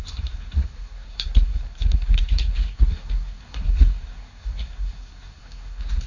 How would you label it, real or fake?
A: fake